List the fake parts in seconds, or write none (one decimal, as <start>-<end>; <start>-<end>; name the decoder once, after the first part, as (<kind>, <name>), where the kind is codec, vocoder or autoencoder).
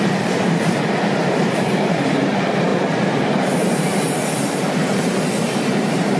0.0-2.7 (vocoder, BigVGAN v2); 3.3-6.2